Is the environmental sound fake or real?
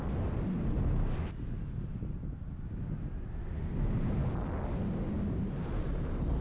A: real